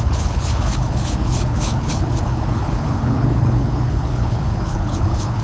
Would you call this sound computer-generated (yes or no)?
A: yes